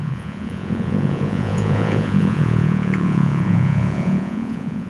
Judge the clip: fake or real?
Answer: fake